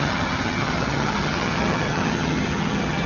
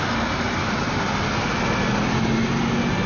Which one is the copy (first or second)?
first